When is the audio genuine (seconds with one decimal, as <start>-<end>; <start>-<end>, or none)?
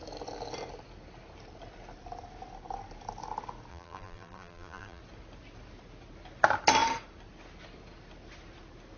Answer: 0.0-3.7; 5.0-9.0